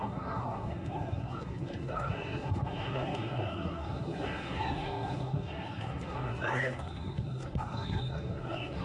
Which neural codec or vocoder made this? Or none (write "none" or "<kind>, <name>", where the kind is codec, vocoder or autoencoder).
codec, SNAC